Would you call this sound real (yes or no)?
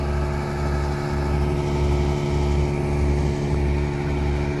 yes